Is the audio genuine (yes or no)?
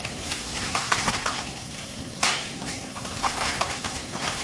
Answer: no